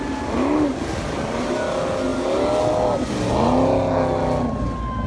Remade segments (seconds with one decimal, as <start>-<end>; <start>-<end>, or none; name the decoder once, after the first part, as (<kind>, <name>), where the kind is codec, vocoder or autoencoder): none